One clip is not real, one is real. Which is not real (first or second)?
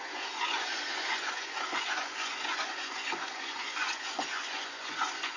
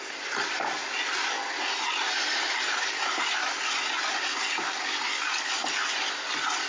first